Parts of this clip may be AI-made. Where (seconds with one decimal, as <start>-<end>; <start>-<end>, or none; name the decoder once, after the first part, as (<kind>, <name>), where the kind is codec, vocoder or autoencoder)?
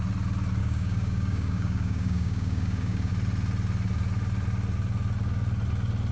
0.6-3.1 (codec, DAC)